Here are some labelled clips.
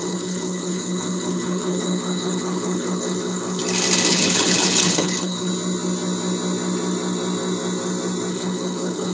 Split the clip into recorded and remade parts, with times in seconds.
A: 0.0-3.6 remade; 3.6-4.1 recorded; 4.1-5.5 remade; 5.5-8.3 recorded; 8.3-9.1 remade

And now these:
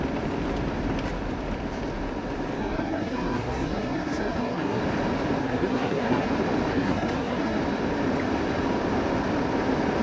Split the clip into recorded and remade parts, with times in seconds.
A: 0.0-2.6 recorded; 2.6-4.8 remade; 4.8-5.4 recorded; 5.4-6.3 remade; 6.3-6.7 recorded; 6.7-7.6 remade; 7.6-10.0 recorded

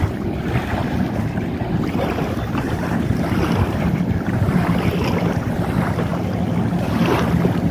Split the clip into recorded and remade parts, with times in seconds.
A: 0.0-0.6 recorded; 0.6-4.5 remade; 4.5-6.1 recorded; 6.1-6.9 remade; 6.9-7.7 recorded

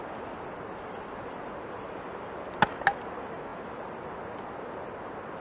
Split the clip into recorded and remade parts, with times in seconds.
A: 0.0-5.4 recorded

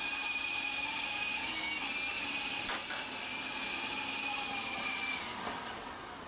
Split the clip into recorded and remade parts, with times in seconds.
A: 0.0-6.3 recorded

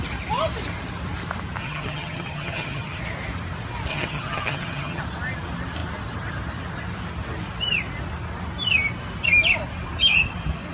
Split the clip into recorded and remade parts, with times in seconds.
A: 0.0-1.6 recorded; 1.6-3.0 remade; 3.0-3.9 recorded; 3.9-5.0 remade; 5.0-10.7 recorded